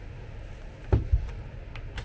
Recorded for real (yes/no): yes